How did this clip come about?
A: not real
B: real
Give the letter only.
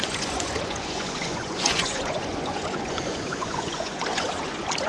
A